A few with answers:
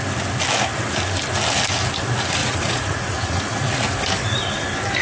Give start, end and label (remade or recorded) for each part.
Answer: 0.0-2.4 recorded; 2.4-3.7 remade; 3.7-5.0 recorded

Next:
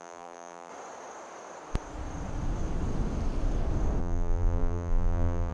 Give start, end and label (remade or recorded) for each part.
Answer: 0.0-0.7 remade; 0.7-4.0 recorded; 4.0-5.5 remade

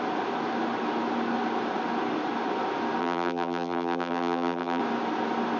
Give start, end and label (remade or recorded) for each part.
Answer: 0.0-3.0 recorded; 3.0-4.8 remade; 4.8-5.6 recorded

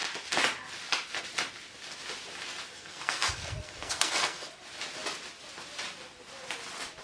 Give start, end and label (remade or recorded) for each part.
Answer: 0.0-2.7 recorded; 2.7-4.5 remade; 4.5-7.0 recorded